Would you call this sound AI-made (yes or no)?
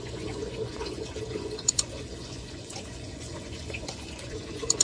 yes